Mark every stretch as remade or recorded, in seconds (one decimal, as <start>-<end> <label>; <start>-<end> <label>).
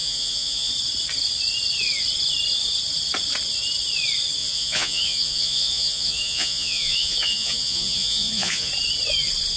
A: 0.0-0.7 remade; 0.7-4.4 recorded; 4.4-8.7 remade; 8.7-9.6 recorded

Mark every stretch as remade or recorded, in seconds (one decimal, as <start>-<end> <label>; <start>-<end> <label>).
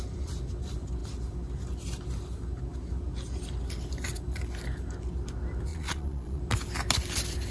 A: 0.0-5.7 recorded; 5.7-6.4 remade; 6.4-7.5 recorded